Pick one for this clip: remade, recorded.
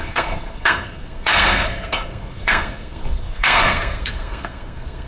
remade